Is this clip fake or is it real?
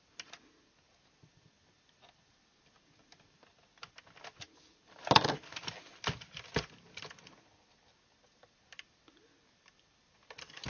real